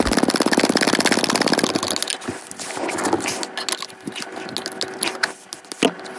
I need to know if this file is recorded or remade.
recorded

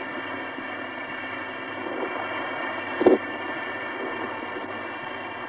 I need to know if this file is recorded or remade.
recorded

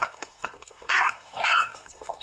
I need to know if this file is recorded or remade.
remade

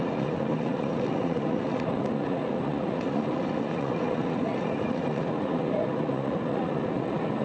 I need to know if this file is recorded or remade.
remade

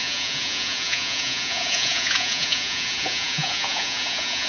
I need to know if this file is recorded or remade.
remade